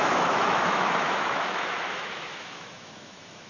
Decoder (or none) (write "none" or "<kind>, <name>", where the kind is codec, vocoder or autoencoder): autoencoder, DAC-VAE